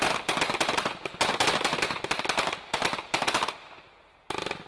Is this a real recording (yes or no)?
yes